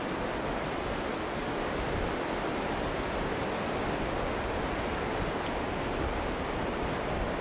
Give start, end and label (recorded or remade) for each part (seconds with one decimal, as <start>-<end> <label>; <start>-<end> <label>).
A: 0.0-7.4 recorded